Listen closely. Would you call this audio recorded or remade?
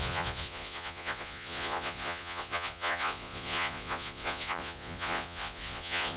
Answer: remade